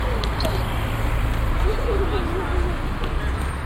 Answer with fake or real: real